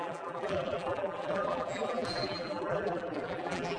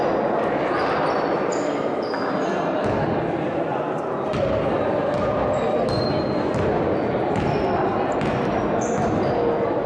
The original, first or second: second